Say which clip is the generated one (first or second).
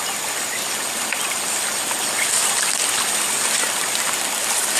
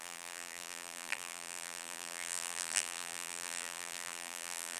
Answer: second